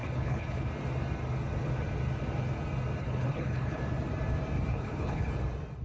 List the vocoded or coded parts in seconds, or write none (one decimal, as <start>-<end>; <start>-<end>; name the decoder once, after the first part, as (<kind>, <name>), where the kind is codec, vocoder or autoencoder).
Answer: 0.0-0.7 (codec, HILCodec); 3.0-3.8; 4.7-5.3